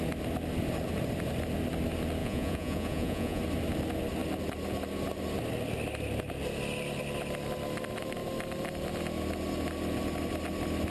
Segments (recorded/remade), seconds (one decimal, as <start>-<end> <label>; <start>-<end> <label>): 0.0-2.2 recorded; 2.2-3.4 remade; 3.4-10.9 recorded